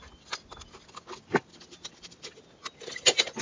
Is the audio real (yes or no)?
yes